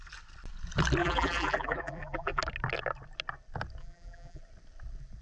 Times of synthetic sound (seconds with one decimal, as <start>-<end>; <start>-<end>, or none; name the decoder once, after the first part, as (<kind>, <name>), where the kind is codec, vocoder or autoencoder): 1.0-2.4 (vocoder, BigVGAN v2); 3.8-4.4